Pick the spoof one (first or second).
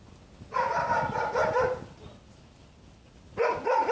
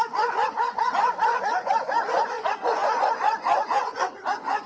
second